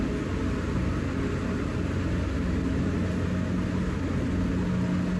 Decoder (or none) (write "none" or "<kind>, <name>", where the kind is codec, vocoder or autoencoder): none